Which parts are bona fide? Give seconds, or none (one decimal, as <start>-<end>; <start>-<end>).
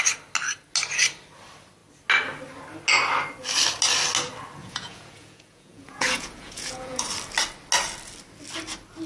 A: 0.0-4.6; 7.0-9.1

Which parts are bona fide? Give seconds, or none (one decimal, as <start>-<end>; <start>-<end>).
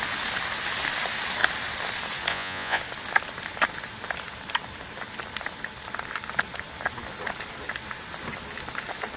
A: 0.0-2.3; 2.8-9.2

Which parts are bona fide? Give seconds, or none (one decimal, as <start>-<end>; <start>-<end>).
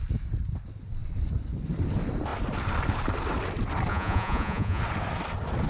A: 0.0-3.9; 4.8-5.7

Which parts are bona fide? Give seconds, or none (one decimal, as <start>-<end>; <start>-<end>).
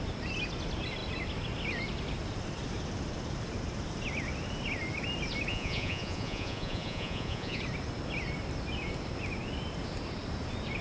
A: 0.0-5.5; 7.6-10.8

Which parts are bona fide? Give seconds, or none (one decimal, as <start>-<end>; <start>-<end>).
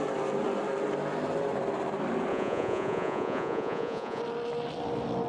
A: 0.0-2.3; 4.2-5.3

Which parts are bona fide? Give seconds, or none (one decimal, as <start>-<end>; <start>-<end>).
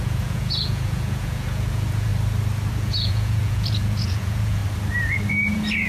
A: 2.1-2.7; 4.6-5.3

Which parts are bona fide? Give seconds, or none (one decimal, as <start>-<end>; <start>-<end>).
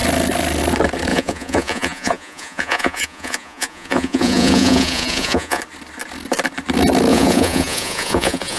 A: 0.0-1.1; 5.6-7.1